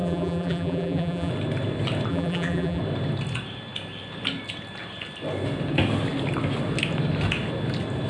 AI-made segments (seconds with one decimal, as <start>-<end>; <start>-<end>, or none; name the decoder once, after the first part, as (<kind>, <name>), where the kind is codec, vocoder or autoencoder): 0.0-1.3 (vocoder, BigVGAN v2); 2.1-2.8